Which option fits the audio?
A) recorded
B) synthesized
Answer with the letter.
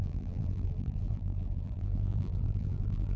B